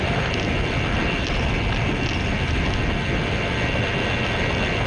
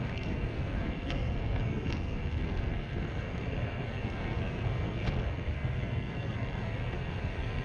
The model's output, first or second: second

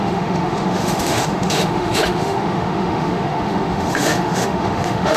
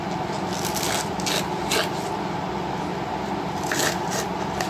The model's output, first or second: first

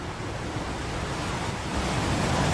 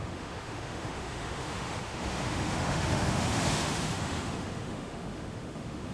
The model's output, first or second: second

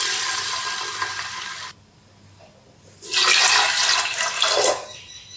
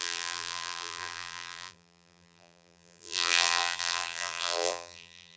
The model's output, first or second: second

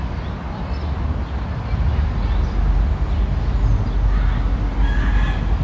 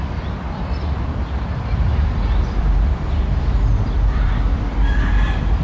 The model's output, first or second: second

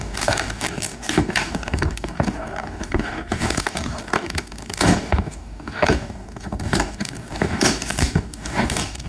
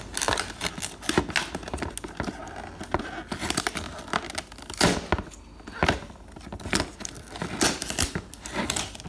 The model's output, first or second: first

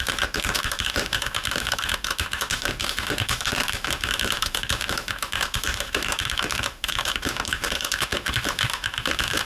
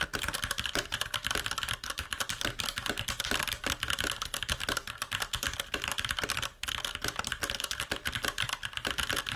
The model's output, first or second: first